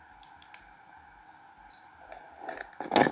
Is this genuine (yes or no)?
yes